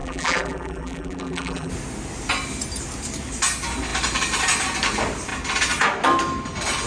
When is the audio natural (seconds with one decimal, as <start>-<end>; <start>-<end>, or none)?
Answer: 1.7-6.9